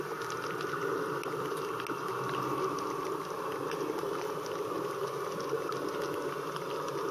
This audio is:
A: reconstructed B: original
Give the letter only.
B